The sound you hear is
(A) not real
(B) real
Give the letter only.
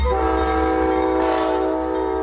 B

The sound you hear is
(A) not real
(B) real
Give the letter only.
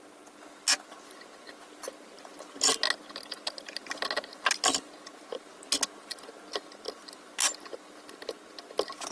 B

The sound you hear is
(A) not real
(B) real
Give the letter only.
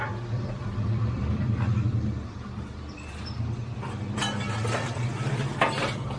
A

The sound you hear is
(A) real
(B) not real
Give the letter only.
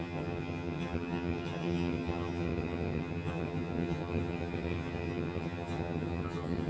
B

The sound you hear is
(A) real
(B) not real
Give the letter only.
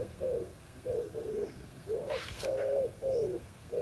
B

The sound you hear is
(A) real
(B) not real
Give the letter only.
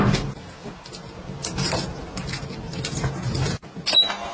A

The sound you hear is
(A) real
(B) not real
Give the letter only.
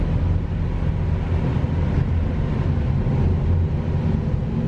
A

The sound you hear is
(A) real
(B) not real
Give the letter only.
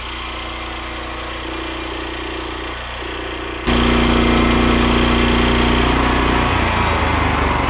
A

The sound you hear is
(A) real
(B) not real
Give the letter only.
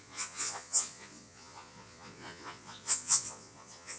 B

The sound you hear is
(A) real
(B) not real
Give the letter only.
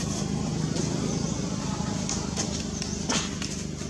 A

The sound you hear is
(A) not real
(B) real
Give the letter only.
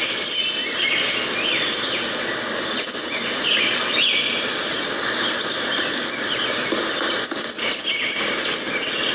B